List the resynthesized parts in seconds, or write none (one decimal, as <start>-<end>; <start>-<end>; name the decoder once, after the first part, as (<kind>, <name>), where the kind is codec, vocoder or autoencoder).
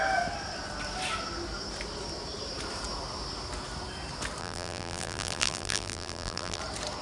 4.4-6.6 (vocoder, BigVGAN v2)